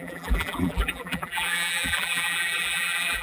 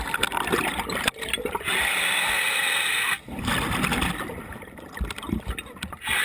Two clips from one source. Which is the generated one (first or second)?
first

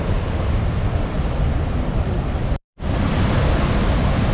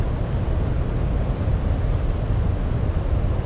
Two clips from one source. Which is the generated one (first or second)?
first